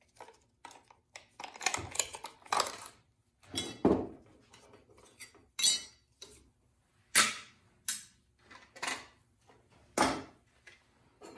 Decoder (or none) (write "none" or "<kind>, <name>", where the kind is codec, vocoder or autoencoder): none